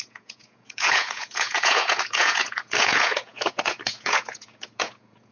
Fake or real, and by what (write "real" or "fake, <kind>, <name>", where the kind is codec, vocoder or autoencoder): fake, vocoder, Vocos